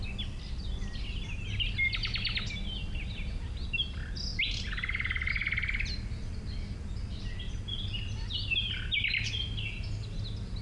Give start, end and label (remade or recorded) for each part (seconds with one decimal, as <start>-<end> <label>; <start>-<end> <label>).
0.0-10.6 recorded